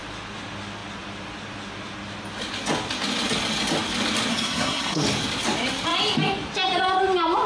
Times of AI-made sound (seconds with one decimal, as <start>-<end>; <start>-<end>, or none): 4.3-5.0